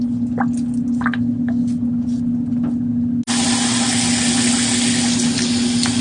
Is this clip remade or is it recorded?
recorded